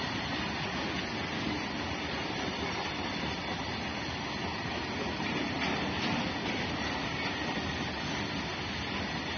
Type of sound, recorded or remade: recorded